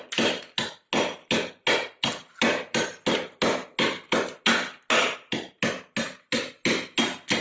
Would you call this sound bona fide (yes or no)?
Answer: yes